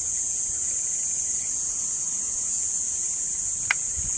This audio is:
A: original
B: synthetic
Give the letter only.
B